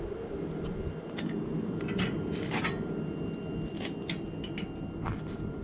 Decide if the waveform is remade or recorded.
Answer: recorded